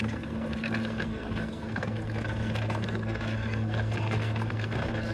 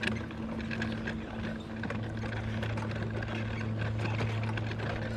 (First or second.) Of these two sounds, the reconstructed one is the first